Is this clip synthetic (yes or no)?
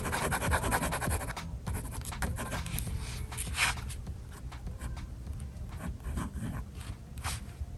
no